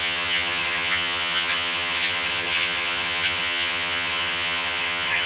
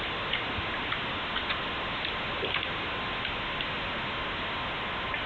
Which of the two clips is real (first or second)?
second